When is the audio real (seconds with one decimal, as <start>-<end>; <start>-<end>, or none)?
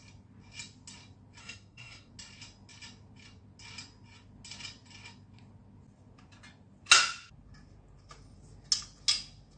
0.0-1.4; 2.1-9.6